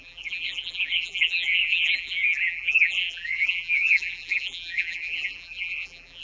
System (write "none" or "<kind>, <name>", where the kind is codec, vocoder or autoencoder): vocoder, BigVGAN v2